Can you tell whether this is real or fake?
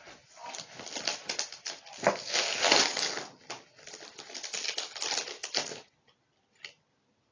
real